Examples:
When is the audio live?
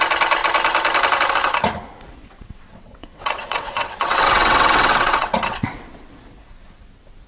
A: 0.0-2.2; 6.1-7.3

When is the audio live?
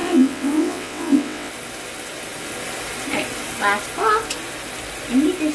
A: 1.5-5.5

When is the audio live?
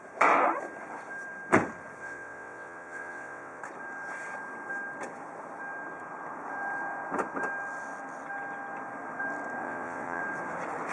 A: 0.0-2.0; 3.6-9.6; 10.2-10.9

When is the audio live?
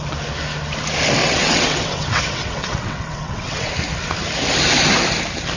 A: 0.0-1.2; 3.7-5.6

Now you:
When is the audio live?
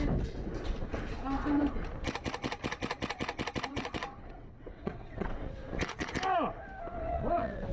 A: 0.0-3.7; 6.1-6.9